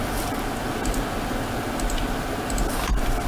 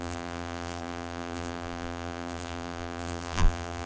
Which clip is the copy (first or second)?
second